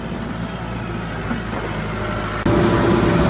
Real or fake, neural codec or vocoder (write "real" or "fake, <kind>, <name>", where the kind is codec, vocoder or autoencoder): real